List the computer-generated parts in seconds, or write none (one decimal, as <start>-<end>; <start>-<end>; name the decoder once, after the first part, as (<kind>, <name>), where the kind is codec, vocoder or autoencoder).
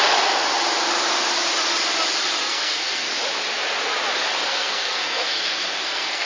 2.4-3.1 (codec, SNAC); 4.5-6.3